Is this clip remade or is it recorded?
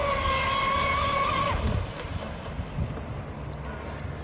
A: recorded